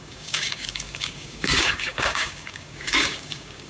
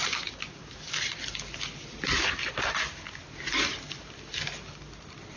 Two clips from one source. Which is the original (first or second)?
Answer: second